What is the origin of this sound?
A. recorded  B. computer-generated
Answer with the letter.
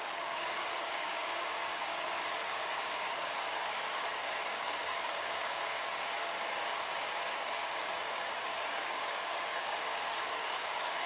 B